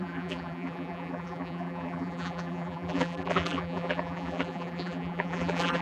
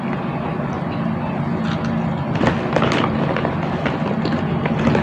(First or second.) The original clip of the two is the second